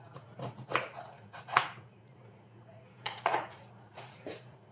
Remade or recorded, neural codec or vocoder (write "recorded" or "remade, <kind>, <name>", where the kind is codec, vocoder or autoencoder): remade, vocoder, Vocos